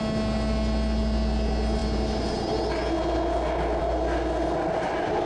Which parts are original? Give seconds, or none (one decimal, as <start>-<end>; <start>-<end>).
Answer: 0.0-5.3